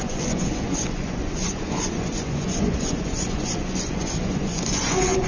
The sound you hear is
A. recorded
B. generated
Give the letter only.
B